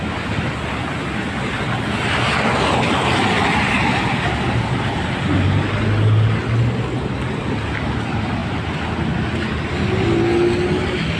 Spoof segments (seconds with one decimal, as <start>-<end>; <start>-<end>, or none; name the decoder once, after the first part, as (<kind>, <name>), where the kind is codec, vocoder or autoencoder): none